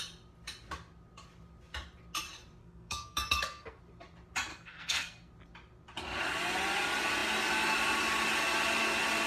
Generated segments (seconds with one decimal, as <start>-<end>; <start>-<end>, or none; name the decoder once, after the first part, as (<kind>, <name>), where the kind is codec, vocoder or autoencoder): 2.6-3.8 (codec, SNAC); 4.5-5.3